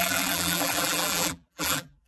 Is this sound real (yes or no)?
no